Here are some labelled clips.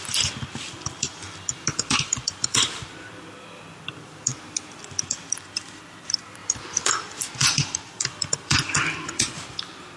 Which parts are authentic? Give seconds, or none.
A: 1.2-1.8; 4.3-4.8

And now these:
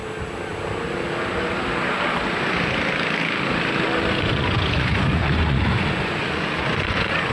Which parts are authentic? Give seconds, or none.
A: 0.0-4.1

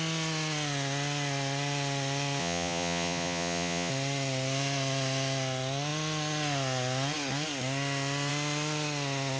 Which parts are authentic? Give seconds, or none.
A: 0.0-2.4; 3.9-9.4

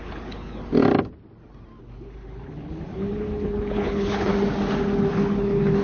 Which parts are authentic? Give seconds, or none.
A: 0.6-1.8; 4.3-5.1

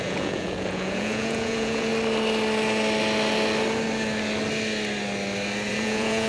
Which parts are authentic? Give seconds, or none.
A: 1.9-5.7

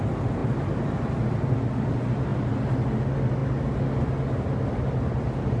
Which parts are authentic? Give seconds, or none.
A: 0.0-5.6